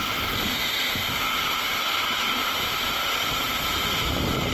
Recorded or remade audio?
recorded